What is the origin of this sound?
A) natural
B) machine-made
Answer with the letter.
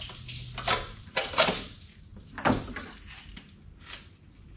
A